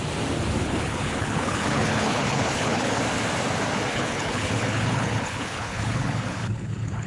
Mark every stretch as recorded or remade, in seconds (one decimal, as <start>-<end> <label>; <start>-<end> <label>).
0.0-0.6 recorded; 0.6-3.0 remade; 3.0-3.9 recorded; 3.9-7.1 remade

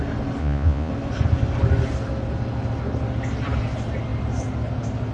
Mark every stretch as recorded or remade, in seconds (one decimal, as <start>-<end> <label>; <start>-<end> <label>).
0.0-0.4 recorded; 0.4-0.9 remade; 0.9-5.1 recorded

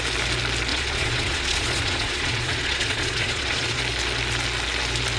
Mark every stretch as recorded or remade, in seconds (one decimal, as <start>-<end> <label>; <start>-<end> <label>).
0.0-0.7 recorded; 0.7-3.8 remade; 3.8-5.2 recorded

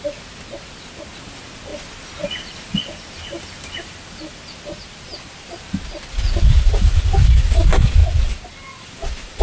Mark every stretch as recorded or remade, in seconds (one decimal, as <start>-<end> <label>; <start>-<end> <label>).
0.0-9.4 recorded

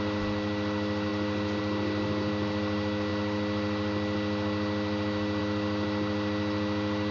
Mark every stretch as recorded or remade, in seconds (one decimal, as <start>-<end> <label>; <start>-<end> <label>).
0.0-7.1 recorded